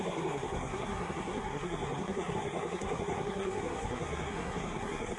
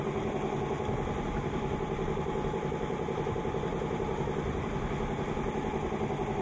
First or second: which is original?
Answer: second